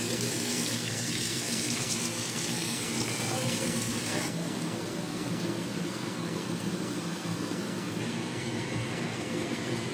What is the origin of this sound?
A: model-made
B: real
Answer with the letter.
A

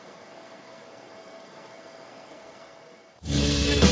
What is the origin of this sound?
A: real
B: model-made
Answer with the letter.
B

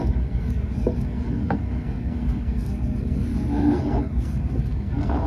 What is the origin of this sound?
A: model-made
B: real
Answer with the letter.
A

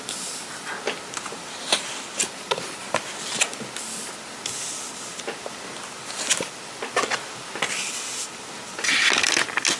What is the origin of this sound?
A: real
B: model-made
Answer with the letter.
A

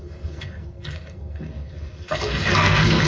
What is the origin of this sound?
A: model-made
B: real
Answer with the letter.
A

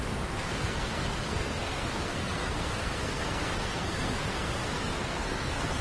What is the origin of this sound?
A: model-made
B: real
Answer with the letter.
A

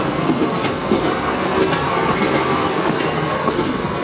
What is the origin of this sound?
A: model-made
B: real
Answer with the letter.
A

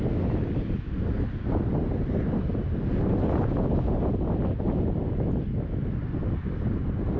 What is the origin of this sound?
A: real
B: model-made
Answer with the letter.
A